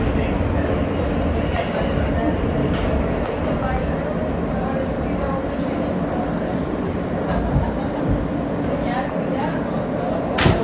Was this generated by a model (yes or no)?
no